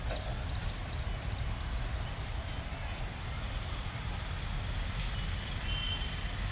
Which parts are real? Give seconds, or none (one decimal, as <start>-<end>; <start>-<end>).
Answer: 0.0-6.5